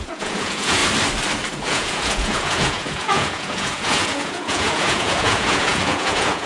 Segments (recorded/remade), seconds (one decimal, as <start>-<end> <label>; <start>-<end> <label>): 0.0-0.8 remade; 0.8-1.7 recorded; 1.7-6.5 remade